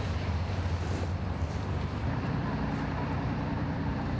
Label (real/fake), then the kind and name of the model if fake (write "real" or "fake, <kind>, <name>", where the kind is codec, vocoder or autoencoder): fake, vocoder, BigVGAN v2